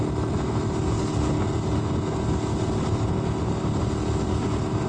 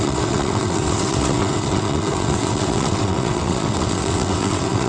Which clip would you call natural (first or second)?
first